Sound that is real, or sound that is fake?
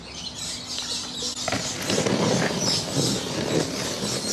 real